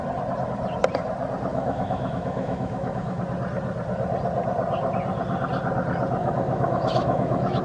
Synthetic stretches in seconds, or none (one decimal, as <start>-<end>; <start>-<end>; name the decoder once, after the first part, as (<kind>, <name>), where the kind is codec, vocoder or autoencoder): 1.5-3.2 (autoencoder, DAC-VAE); 6.2-7.6